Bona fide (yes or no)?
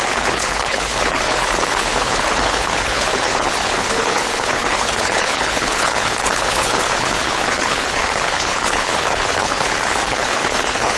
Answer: no